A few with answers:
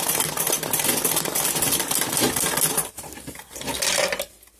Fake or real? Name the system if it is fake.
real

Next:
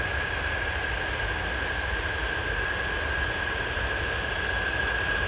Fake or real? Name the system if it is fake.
real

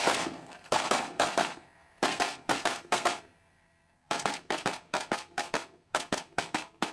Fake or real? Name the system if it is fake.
fake, codec, SNAC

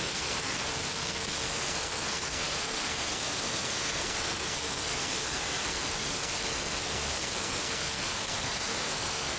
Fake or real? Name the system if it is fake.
fake, codec, SNAC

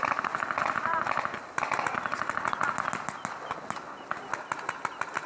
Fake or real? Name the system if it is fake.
real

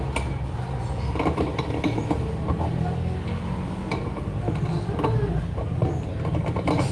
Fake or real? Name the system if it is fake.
real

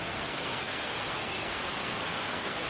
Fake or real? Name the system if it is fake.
fake, codec, SNAC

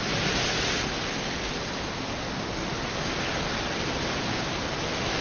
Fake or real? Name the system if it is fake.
real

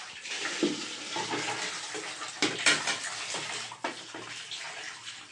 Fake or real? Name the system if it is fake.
real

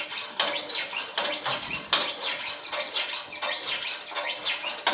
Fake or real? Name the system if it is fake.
real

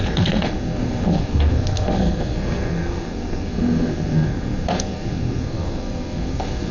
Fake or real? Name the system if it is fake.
fake, codec, SNAC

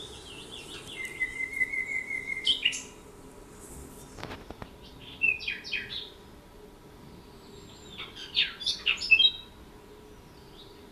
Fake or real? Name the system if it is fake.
real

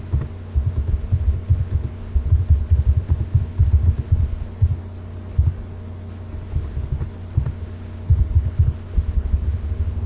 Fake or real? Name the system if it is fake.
real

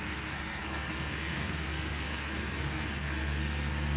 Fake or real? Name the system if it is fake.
fake, codec, SNAC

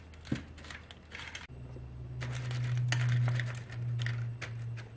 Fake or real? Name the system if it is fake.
real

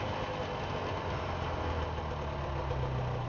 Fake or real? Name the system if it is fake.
real